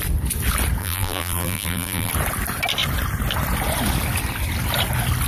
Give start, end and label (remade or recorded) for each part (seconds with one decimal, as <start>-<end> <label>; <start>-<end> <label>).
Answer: 0.0-0.8 recorded; 0.8-2.1 remade; 2.1-5.3 recorded